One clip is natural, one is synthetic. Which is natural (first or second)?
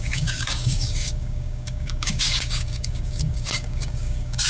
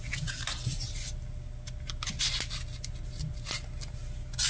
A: second